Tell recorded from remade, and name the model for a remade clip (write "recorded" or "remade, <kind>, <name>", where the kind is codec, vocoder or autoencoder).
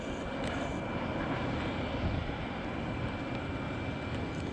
recorded